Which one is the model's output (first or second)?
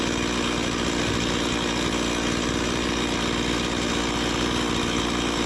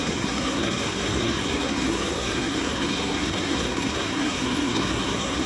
second